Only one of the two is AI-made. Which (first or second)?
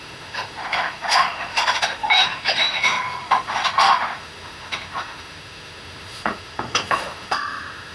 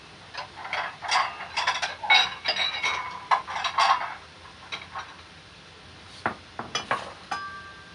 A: first